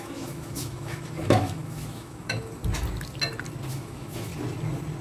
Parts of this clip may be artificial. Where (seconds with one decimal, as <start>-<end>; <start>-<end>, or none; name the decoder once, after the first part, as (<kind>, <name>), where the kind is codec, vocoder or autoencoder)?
0.0-2.6 (autoencoder, DAC-VAE); 3.7-4.3